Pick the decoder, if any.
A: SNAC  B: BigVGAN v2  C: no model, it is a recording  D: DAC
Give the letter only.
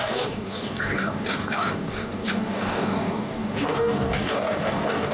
D